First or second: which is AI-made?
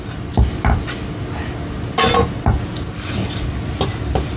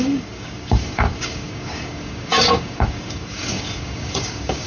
second